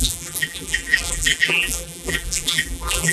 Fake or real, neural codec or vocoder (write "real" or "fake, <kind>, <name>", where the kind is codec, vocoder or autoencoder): fake, vocoder, BigVGAN v2